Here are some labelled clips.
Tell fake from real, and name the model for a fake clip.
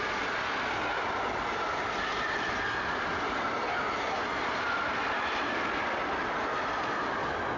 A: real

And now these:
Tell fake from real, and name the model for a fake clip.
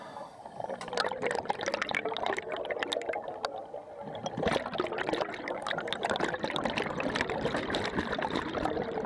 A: real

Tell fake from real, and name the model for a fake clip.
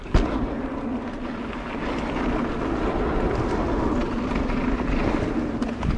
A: real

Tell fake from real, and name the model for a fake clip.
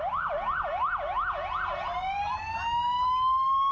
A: real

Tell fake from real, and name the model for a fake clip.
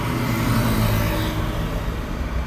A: real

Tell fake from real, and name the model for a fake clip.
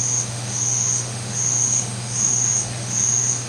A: fake, autoencoder, DAC-VAE